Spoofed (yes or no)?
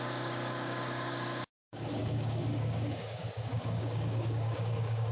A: yes